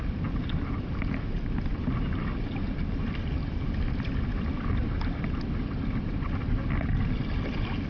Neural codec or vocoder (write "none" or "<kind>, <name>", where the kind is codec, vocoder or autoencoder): none